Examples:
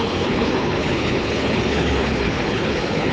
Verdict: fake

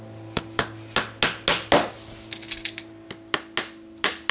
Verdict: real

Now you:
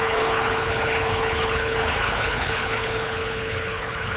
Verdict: fake